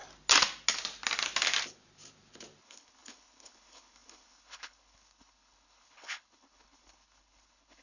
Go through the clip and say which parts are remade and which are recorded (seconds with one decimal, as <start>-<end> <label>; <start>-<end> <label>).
0.0-2.6 recorded; 2.6-7.8 remade